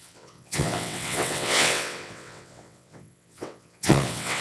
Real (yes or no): no